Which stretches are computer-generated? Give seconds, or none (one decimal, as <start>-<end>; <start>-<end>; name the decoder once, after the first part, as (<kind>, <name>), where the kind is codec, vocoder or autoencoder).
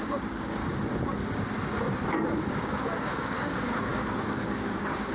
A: 0.0-0.6 (codec, DAC); 2.6-5.1